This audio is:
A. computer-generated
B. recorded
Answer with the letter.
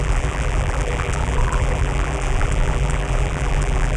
A